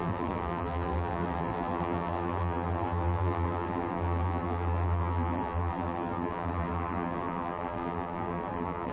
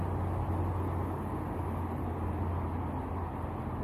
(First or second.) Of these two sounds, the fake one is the first